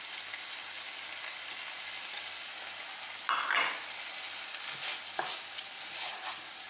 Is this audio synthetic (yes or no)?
no